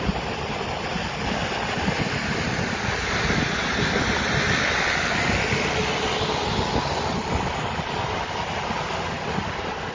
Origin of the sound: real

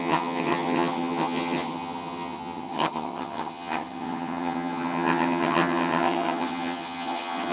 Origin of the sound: fake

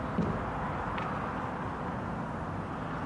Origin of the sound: real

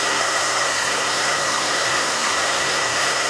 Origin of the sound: fake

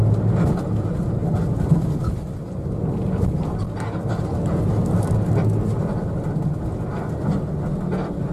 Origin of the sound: real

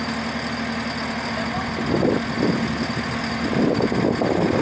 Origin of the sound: real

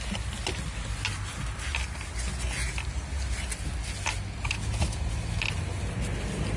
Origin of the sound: real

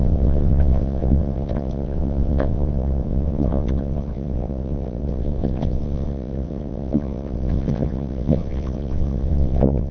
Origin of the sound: fake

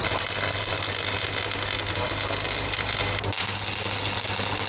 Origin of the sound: real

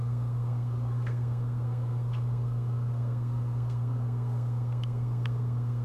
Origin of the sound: fake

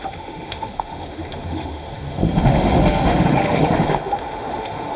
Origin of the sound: fake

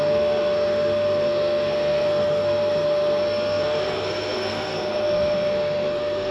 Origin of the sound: fake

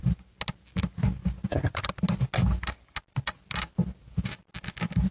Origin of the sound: real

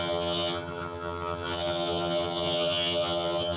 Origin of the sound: fake